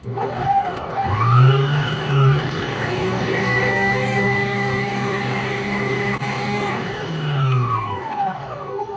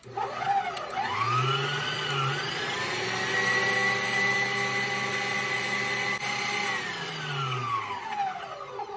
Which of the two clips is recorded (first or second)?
second